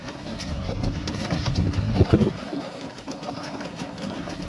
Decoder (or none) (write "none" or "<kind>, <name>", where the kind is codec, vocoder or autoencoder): codec, SNAC